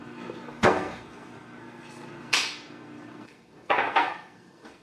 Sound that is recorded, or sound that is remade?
remade